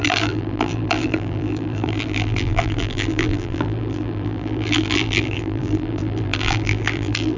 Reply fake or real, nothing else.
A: fake